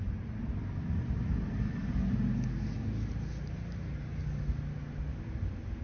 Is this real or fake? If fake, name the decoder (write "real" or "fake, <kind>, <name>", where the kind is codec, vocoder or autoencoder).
real